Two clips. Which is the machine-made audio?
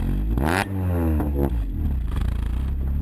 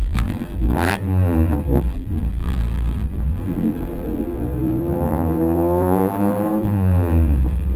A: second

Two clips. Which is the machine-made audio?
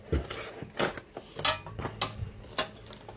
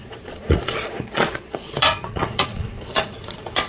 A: second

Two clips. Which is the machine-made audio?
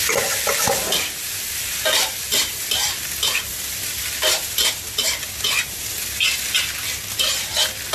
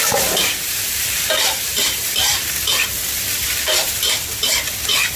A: second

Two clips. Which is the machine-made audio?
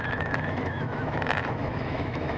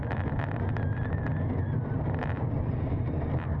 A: first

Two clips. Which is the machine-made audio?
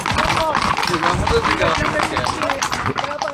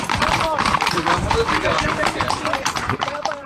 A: second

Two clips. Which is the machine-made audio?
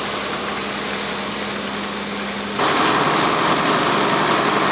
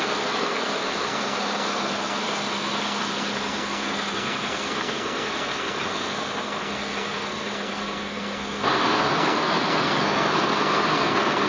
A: second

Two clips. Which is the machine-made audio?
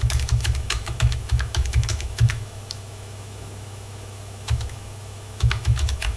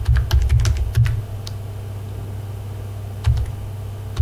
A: first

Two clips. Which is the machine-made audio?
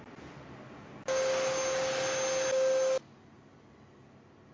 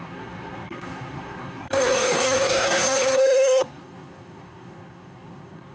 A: second